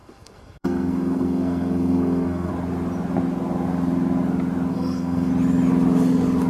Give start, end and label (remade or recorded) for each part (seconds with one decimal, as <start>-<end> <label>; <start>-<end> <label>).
0.0-2.5 remade; 2.5-4.7 recorded; 4.7-5.3 remade; 5.3-6.5 recorded